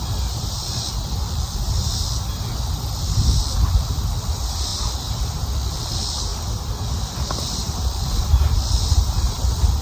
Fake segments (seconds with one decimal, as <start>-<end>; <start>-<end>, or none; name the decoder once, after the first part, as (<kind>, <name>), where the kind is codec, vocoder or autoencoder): none